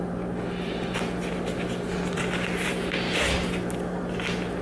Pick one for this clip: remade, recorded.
recorded